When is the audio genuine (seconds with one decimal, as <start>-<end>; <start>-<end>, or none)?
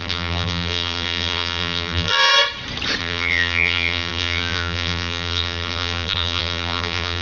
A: 2.3-3.0